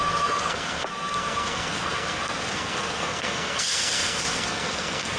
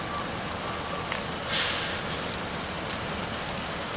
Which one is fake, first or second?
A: first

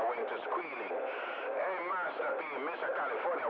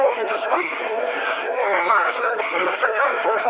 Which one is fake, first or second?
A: second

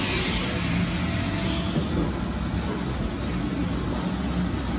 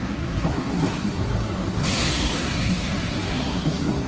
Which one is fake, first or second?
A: second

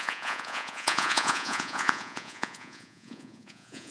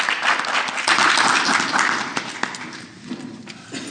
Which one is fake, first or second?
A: first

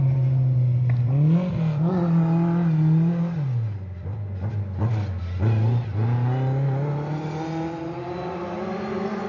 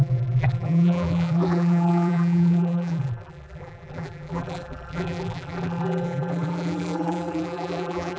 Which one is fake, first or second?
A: second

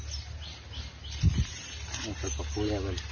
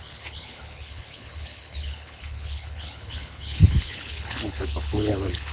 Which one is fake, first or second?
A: second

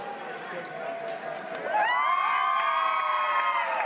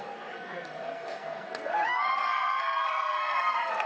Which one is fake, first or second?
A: second